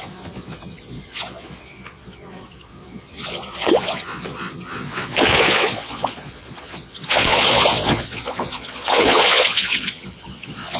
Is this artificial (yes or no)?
yes